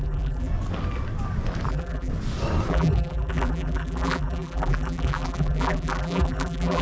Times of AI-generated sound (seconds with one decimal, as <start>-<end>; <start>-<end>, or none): 0.0-0.5; 1.7-2.1; 2.7-6.8